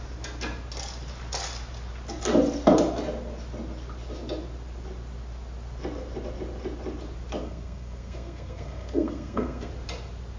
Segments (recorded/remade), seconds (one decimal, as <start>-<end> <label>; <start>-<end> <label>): 0.0-7.4 recorded; 7.4-9.7 remade; 9.7-10.4 recorded